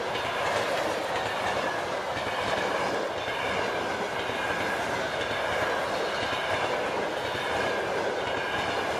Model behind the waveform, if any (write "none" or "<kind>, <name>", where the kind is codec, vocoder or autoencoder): none